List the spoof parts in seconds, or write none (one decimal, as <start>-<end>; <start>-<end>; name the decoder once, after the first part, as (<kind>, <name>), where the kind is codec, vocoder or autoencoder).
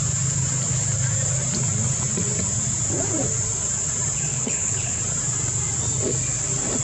4.3-5.0 (codec, HILCodec)